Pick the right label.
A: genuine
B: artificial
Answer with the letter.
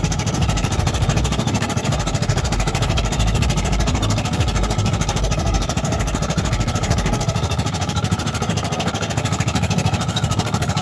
B